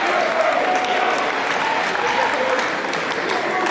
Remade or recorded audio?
recorded